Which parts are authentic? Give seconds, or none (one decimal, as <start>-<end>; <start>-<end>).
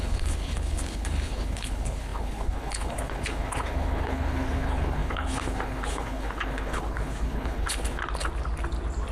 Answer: 8.0-9.1